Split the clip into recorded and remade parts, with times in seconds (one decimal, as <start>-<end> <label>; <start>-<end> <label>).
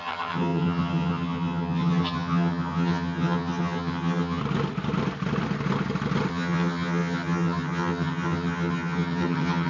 0.0-4.4 remade; 4.4-6.3 recorded; 6.3-9.7 remade